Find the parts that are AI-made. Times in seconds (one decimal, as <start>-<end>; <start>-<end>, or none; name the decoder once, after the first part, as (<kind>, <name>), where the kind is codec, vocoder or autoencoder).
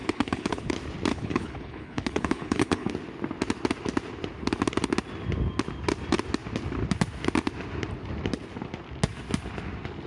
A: 0.0-0.7 (codec, HILCodec); 1.1-2.9